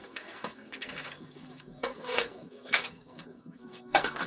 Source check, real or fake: fake